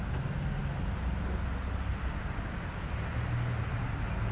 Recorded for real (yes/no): yes